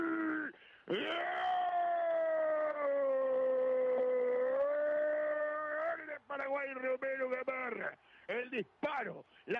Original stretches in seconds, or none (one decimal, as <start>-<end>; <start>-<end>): 0.0-9.6